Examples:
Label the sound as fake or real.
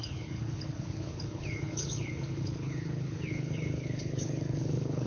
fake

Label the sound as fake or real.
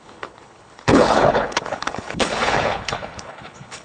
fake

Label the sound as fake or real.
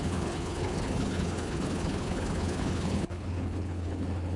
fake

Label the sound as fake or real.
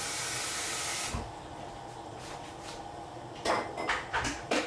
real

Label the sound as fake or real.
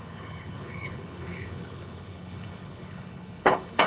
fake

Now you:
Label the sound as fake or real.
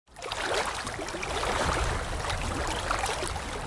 real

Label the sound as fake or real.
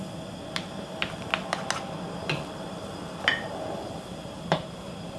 real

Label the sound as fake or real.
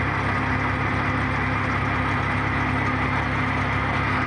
real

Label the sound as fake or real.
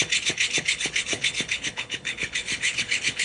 fake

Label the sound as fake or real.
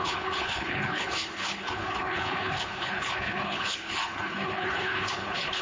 fake